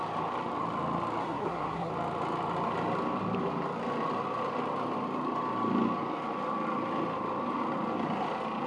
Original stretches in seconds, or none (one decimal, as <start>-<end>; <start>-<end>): 0.0-1.2; 1.9-8.7